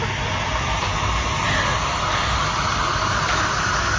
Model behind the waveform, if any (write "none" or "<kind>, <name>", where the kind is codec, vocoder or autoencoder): none